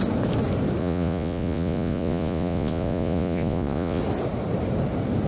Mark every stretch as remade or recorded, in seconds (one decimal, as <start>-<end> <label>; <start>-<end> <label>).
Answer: 0.0-0.8 recorded; 0.8-4.0 remade; 4.0-5.3 recorded